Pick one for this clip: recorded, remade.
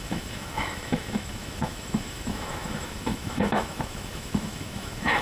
remade